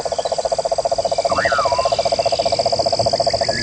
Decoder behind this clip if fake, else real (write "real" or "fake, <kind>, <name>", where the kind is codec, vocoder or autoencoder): real